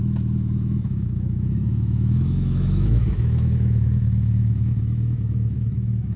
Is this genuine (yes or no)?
no